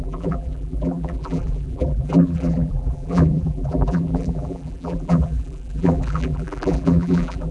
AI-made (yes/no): yes